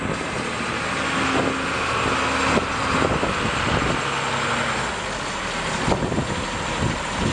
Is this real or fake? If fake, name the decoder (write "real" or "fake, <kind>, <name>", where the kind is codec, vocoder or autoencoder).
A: real